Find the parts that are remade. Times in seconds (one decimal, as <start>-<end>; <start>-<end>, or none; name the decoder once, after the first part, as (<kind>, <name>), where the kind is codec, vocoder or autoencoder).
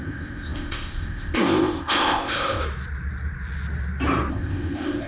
0.0-2.6 (codec, ZipCodec); 4.3-5.1